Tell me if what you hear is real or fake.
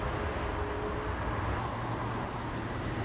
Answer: real